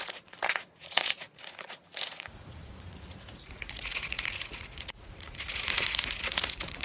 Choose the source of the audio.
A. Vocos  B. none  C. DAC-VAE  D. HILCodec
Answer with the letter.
A